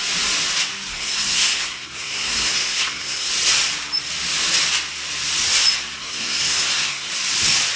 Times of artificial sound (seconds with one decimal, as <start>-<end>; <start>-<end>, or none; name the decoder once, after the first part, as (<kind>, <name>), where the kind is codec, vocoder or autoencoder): 0.9-3.3 (codec, SNAC); 6.0-7.1